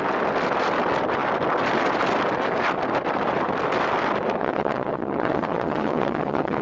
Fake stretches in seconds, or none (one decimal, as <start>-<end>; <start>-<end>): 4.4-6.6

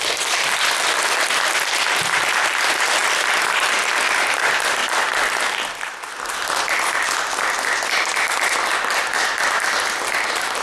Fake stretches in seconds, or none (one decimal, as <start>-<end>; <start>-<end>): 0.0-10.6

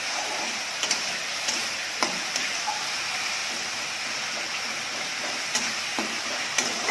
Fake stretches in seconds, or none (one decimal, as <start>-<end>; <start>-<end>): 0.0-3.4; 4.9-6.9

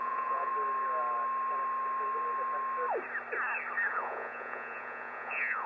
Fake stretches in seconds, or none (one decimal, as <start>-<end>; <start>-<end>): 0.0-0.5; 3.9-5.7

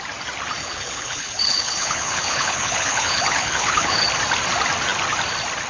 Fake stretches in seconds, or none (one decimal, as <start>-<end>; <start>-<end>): 0.6-4.0

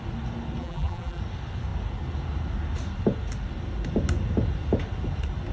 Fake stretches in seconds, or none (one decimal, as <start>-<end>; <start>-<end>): 0.6-1.2